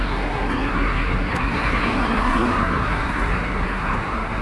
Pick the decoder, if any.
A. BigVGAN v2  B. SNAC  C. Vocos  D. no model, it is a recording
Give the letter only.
B